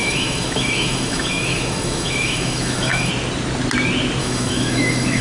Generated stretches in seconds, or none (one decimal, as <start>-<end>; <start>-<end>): 0.0-3.1; 4.2-5.2